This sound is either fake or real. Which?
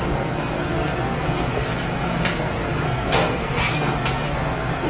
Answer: fake